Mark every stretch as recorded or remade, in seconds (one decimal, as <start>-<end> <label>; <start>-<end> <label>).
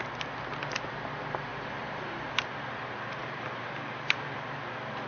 0.0-1.5 recorded; 1.5-4.6 remade; 4.6-5.1 recorded